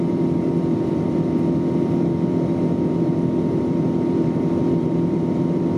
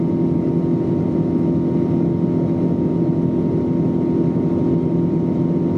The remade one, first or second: first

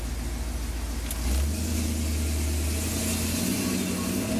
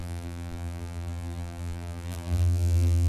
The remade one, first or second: second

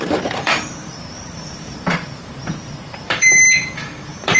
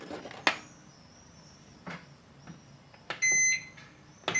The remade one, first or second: first